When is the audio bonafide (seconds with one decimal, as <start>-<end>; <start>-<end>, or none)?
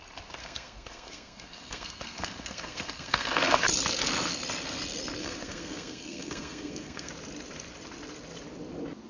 0.0-0.4; 3.6-5.2; 7.1-9.1